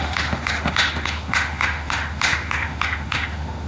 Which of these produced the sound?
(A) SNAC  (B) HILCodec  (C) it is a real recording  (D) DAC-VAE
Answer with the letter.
D